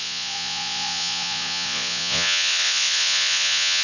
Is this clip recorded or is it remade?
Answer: remade